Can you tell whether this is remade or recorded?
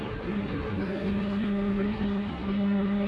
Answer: remade